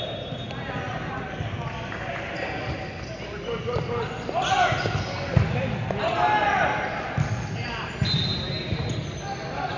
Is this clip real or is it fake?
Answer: real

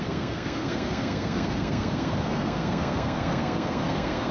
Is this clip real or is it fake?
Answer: fake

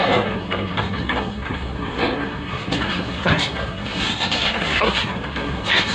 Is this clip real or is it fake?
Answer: fake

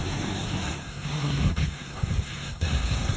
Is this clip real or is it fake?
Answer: fake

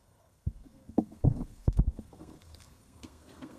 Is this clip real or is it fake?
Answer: fake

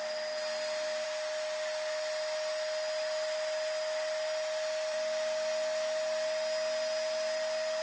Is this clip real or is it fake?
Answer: real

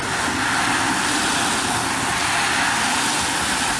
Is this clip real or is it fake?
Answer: real